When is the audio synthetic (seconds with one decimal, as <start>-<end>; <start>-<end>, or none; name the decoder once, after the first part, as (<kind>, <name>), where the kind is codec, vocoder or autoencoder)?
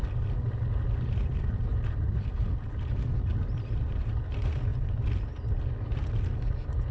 1.7-2.5 (vocoder, BigVGAN v2); 3.3-4.2; 4.7-5.5